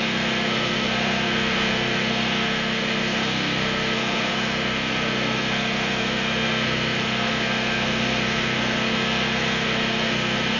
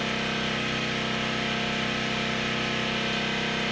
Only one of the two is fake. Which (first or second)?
first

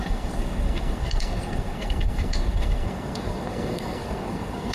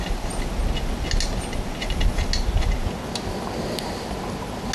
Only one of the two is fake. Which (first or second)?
first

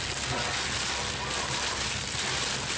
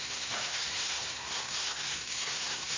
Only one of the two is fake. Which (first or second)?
second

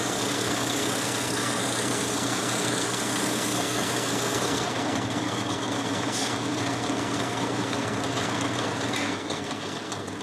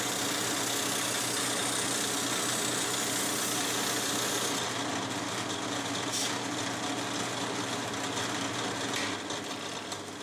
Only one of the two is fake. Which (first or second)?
first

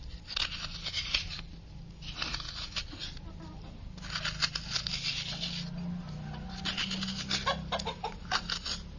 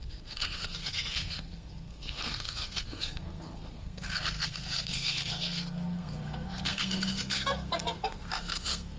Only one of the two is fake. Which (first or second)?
second